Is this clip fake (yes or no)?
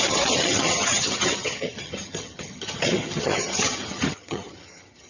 yes